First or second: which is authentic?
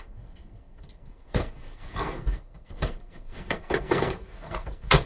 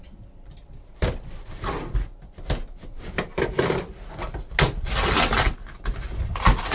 second